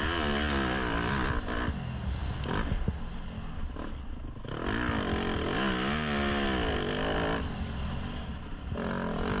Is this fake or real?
real